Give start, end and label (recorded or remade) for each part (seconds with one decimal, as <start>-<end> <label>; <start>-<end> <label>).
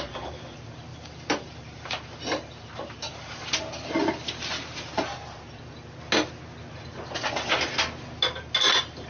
0.0-0.9 recorded; 0.9-3.6 remade; 3.6-5.1 recorded; 5.1-5.6 remade; 5.6-9.1 recorded